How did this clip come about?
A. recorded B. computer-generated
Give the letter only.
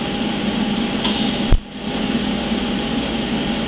A